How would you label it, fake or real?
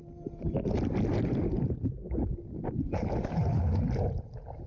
real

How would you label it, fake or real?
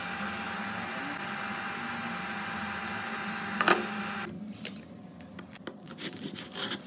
real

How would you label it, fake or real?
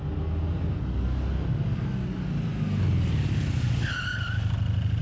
real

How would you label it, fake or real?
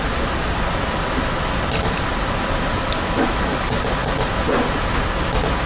real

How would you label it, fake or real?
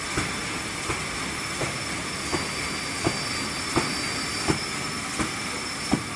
real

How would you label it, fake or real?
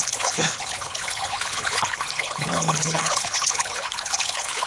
fake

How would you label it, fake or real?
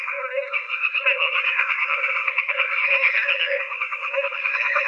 fake